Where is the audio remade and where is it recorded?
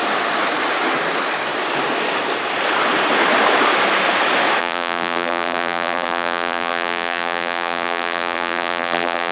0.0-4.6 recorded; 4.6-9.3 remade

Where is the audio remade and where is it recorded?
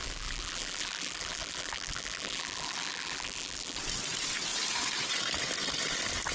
0.0-3.8 remade; 3.8-6.3 recorded